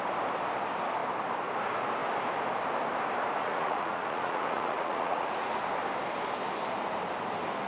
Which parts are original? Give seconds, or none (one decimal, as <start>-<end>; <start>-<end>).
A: 0.0-3.4; 5.5-7.7

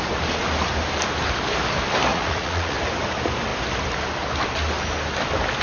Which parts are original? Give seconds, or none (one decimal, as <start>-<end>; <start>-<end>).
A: 0.0-2.1; 2.8-5.6

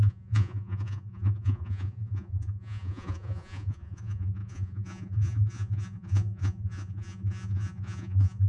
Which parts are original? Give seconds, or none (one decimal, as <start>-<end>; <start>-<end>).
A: none

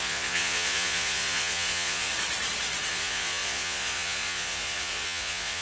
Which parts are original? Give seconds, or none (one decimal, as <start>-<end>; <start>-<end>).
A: 2.1-2.9

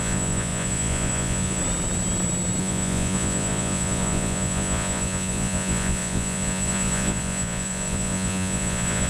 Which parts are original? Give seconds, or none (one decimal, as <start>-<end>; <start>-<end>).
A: 1.6-2.6